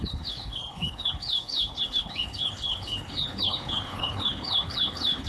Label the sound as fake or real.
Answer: fake